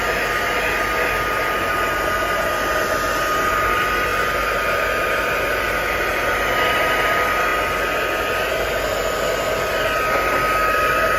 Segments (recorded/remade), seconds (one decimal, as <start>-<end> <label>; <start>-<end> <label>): 0.0-11.2 recorded

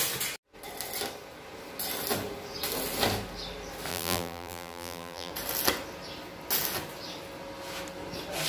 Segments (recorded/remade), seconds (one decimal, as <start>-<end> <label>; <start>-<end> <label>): 0.0-3.9 recorded; 3.9-5.3 remade; 5.3-8.5 recorded

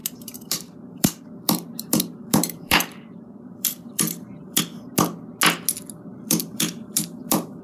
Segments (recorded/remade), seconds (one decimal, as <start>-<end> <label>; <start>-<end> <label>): 0.0-4.6 remade; 4.6-6.1 recorded; 6.1-7.6 remade

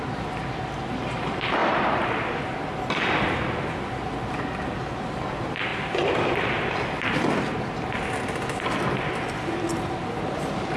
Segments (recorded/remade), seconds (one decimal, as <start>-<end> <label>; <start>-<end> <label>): 0.0-1.6 recorded; 1.6-2.6 remade; 2.6-9.7 recorded; 9.7-10.2 remade; 10.2-10.8 recorded

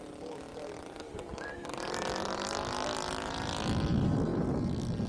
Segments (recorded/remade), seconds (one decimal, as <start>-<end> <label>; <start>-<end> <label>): 0.0-0.5 recorded; 0.5-3.6 remade; 3.6-5.1 recorded

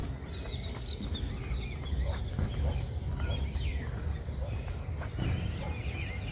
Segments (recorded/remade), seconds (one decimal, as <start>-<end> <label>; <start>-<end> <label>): 0.0-3.7 recorded; 3.7-5.6 remade; 5.6-6.3 recorded